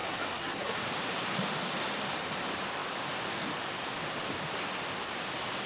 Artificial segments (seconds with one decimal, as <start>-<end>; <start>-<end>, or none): 0.0-0.7